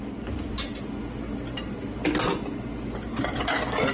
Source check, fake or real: real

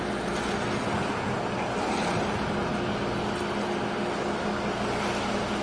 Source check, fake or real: real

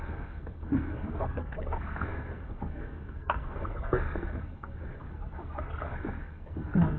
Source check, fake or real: fake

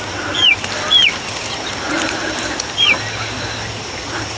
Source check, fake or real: real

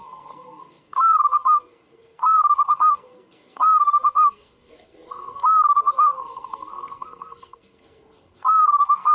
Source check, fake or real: fake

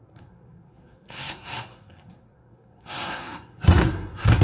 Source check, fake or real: fake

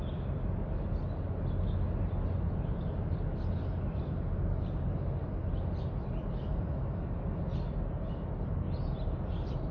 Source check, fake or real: real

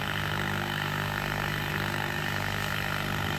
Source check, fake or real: fake